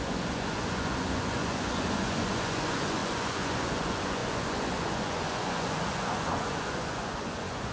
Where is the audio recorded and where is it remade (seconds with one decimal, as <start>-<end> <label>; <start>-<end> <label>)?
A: 0.0-7.7 remade